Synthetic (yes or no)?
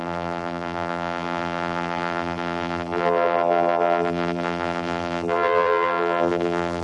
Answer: yes